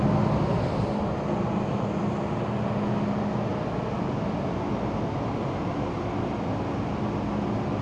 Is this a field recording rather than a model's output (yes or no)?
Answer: yes